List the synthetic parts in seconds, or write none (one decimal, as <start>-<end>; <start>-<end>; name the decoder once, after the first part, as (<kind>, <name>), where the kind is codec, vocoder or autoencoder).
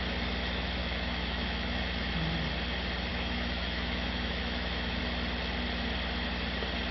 0.8-2.1 (autoencoder, DAC-VAE); 3.1-5.0